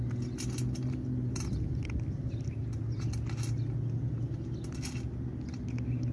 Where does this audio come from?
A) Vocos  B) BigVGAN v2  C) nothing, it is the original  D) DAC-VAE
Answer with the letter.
C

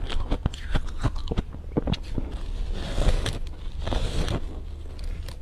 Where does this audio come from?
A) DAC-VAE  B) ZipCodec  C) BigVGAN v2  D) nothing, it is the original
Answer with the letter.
D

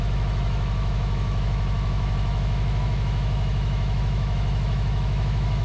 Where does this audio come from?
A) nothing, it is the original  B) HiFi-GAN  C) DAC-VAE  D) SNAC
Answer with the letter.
C